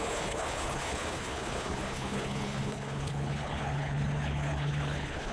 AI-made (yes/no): yes